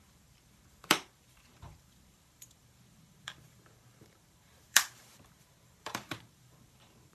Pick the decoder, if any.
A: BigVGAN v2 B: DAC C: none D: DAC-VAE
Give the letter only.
A